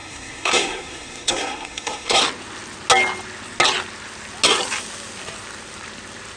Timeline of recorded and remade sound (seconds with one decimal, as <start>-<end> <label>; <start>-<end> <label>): 0.0-2.2 remade; 2.2-6.4 recorded